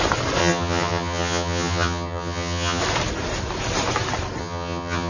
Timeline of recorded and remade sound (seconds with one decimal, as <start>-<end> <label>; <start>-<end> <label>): 0.0-0.4 recorded; 0.4-2.8 remade; 2.8-4.4 recorded; 4.4-5.1 remade